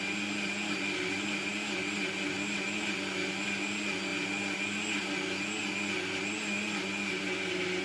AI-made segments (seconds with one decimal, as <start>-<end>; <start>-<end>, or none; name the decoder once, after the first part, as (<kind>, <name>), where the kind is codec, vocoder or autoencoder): none